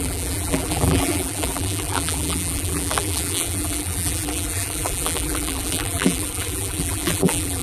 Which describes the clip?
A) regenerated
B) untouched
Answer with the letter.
A